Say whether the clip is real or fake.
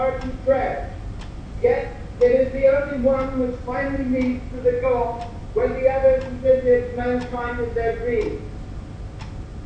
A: real